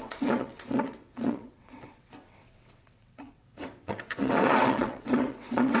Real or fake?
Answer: fake